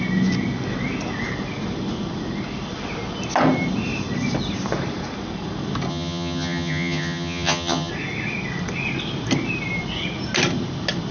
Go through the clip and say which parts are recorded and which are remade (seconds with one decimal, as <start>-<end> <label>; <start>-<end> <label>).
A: 0.0-5.9 recorded; 5.9-7.9 remade; 7.9-11.1 recorded

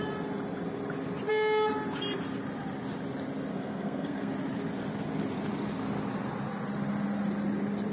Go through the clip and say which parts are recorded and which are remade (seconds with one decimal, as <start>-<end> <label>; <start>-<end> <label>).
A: 0.0-3.5 recorded; 3.5-4.3 remade; 4.3-7.9 recorded

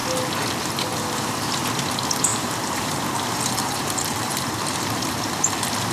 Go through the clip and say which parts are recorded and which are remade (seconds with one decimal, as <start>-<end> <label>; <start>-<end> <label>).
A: 0.0-0.9 recorded; 0.9-1.6 remade; 1.6-2.3 recorded; 2.3-4.5 remade; 4.5-5.9 recorded